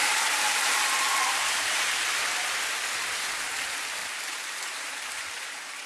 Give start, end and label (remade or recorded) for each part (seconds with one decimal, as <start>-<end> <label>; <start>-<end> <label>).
0.0-0.7 remade; 0.7-1.1 recorded; 1.1-2.0 remade; 2.0-4.0 recorded; 4.0-5.5 remade; 5.5-5.9 recorded